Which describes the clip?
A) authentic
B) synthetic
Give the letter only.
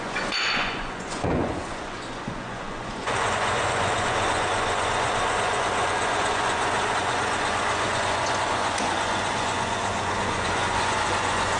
B